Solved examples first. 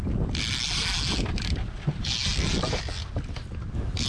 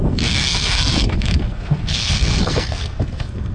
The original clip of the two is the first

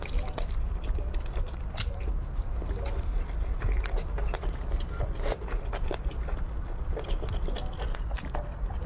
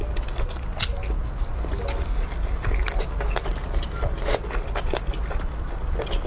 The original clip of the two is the second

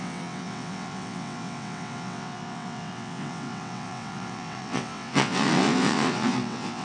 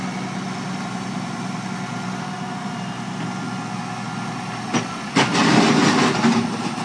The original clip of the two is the second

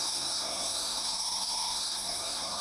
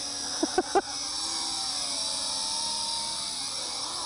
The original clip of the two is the second